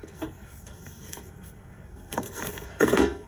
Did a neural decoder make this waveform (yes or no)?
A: yes